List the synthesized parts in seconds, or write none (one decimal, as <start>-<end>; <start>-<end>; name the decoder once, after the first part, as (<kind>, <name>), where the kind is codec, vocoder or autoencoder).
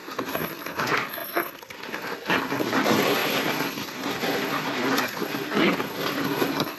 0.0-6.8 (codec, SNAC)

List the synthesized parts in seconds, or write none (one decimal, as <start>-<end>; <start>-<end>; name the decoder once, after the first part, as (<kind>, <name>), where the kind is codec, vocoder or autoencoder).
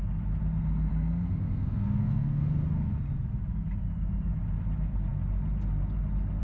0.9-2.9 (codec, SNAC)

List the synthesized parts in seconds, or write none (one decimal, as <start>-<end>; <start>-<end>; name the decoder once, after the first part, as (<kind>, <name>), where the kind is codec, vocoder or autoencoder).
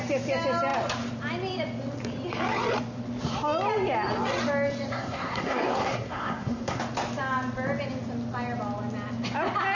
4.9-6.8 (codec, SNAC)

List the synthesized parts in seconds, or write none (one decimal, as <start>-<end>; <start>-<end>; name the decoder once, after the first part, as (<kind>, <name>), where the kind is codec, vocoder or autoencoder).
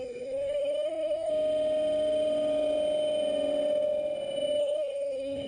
0.0-1.3 (codec, SNAC); 4.6-5.5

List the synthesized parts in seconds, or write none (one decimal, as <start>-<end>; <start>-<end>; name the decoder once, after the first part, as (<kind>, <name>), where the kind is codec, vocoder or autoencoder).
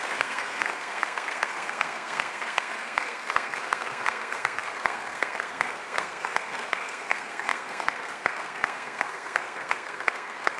0.0-10.6 (codec, SNAC)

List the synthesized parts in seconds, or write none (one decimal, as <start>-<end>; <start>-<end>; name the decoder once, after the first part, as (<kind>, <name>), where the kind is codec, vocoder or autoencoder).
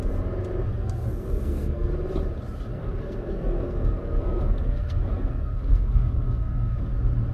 0.7-1.9 (codec, SNAC); 2.7-6.8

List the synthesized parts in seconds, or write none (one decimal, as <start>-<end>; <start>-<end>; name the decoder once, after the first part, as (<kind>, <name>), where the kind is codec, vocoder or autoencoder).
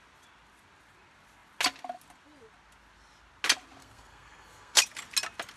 3.8-4.8 (codec, SNAC)